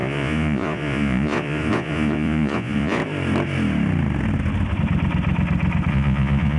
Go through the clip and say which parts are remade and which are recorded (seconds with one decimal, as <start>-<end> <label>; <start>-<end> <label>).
0.0-3.0 remade; 3.0-5.9 recorded; 5.9-6.6 remade